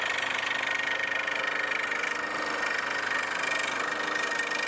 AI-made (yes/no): no